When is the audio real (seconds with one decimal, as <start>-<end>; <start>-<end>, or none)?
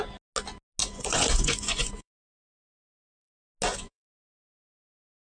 0.0-0.8; 3.3-3.7; 4.4-5.3